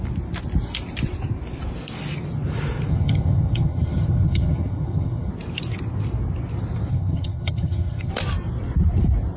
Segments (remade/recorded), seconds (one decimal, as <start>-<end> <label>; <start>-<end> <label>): 0.0-2.9 recorded; 2.9-5.3 remade; 5.3-6.9 recorded; 6.9-8.1 remade; 8.1-9.4 recorded